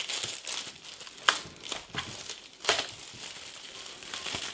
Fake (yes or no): no